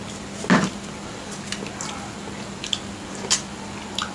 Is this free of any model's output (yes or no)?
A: yes